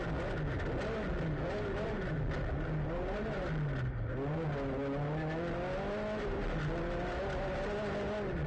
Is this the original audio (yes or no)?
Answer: yes